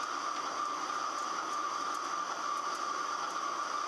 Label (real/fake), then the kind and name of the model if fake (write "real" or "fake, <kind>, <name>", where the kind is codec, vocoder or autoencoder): real